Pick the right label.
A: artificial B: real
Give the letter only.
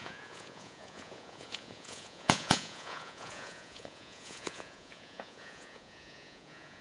A